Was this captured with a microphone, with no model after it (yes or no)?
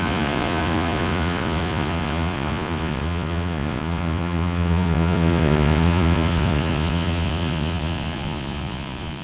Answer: no